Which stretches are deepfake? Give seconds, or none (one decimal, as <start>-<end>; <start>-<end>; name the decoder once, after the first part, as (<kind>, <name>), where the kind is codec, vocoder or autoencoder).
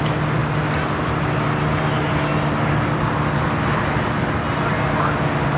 none